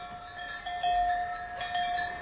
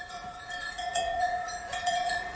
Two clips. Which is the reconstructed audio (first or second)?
second